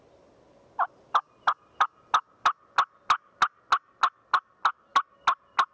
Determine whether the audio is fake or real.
real